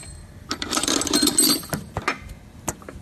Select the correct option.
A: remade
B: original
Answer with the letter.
B